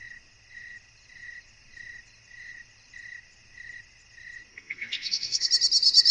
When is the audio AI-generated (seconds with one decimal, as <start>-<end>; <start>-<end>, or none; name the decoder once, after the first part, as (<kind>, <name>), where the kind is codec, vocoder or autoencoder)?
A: 4.5-5.5 (codec, SNAC)